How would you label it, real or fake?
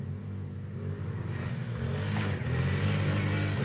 real